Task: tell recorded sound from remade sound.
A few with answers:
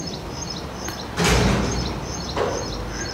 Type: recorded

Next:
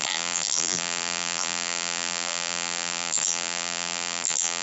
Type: remade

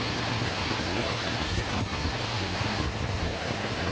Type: remade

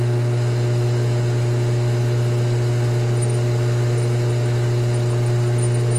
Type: recorded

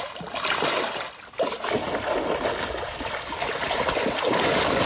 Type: recorded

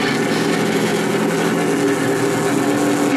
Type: recorded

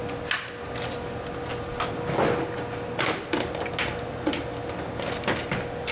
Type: recorded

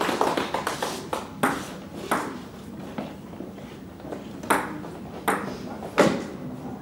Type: recorded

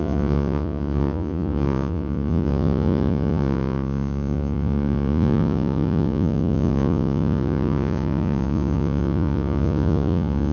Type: remade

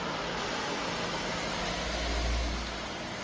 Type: recorded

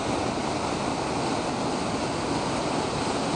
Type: recorded